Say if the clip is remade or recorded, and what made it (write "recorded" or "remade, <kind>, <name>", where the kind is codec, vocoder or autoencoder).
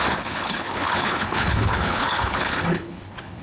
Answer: remade, codec, HILCodec